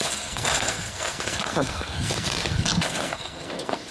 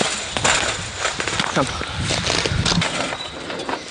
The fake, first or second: first